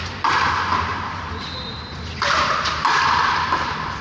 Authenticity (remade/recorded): recorded